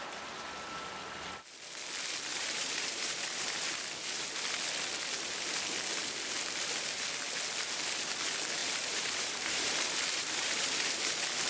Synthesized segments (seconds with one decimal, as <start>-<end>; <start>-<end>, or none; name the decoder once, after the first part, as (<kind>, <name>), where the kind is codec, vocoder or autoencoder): 2.3-3.8 (vocoder, BigVGAN v2); 8.6-11.1

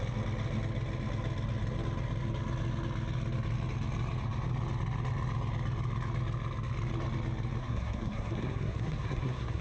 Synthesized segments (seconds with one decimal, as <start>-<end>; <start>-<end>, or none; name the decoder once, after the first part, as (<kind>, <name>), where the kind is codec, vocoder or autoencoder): 7.6-9.6 (codec, SNAC)

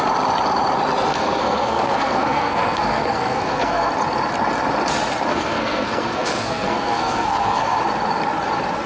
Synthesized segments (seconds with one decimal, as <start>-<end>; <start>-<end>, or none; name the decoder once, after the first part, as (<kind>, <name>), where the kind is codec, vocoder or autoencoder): 1.1-3.9 (codec, SNAC); 5.3-7.8